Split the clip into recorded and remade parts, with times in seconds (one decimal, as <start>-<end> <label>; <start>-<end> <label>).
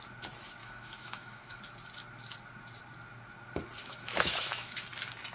0.0-0.6 recorded; 0.6-1.6 remade; 1.6-3.8 recorded; 3.8-4.8 remade; 4.8-5.3 recorded